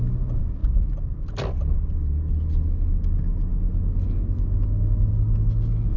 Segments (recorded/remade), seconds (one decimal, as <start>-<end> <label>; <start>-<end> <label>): 0.0-6.0 recorded